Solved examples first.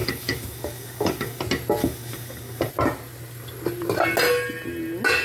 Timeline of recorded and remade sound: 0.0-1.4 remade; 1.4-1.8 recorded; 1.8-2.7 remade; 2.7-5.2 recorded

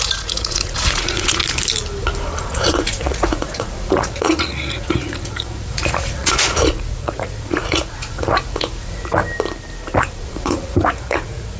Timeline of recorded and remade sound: 0.0-1.4 remade; 1.4-2.4 recorded; 2.4-9.2 remade; 9.2-10.0 recorded; 10.0-11.6 remade

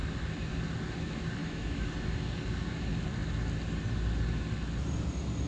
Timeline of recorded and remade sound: 0.0-1.4 recorded; 1.4-1.9 remade; 1.9-5.5 recorded

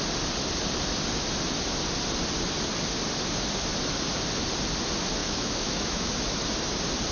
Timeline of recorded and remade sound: 0.0-5.2 recorded; 5.2-6.1 remade; 6.1-7.1 recorded

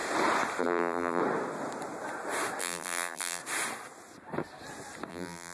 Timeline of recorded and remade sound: 0.0-0.6 recorded; 0.6-1.2 remade; 1.2-2.6 recorded; 2.6-3.4 remade; 3.4-5.1 recorded; 5.1-5.5 remade

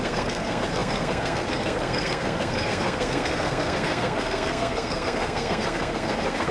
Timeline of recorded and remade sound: 0.0-6.5 remade